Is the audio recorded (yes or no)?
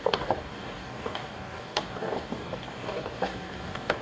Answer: no